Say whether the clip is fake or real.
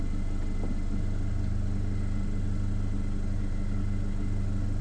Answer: real